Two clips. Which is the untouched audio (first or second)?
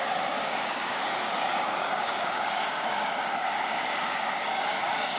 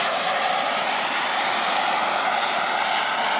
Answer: second